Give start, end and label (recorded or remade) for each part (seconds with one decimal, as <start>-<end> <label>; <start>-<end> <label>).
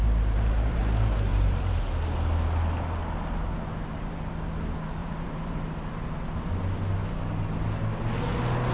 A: 0.0-0.8 remade; 0.8-1.3 recorded; 1.3-1.9 remade; 1.9-5.0 recorded; 5.0-5.9 remade; 5.9-8.7 recorded